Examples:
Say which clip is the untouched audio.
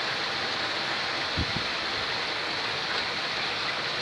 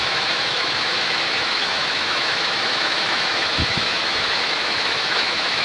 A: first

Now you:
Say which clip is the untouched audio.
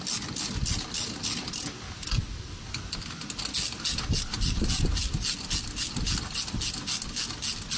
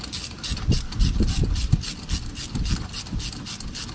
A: first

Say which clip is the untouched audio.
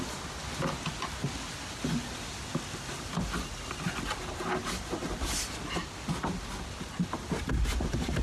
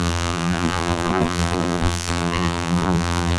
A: first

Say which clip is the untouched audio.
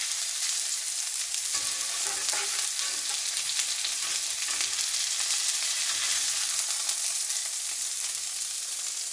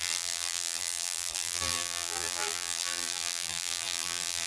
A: first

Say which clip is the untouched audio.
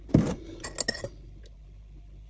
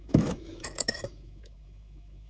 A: first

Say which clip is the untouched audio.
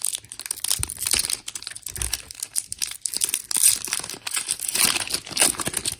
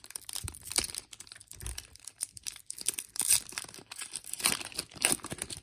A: first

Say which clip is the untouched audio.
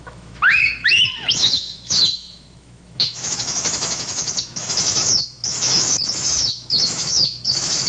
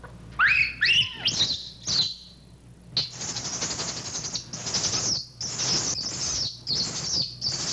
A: second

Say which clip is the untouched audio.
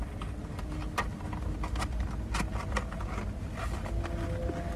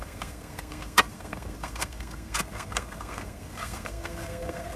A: first